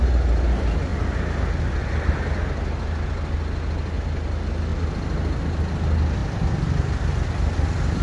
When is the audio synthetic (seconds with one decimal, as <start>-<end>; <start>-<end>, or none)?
4.7-5.4; 6.2-8.0